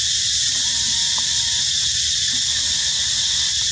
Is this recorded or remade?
recorded